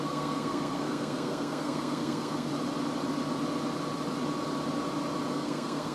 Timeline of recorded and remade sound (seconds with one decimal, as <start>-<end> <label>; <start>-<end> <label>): 0.0-2.5 remade; 2.5-5.3 recorded; 5.3-5.9 remade